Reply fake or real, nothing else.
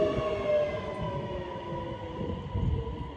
real